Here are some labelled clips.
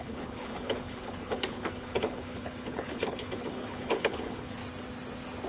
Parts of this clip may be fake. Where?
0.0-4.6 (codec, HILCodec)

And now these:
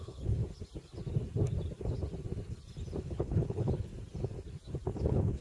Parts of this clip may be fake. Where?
0.0-0.4 (codec, HILCodec); 3.0-3.9; 4.9-5.4

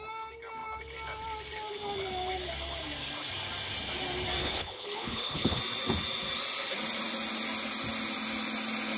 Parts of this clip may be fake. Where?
4.4-5.6 (codec, HILCodec)